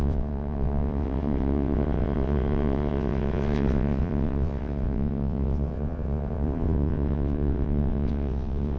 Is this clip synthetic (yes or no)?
yes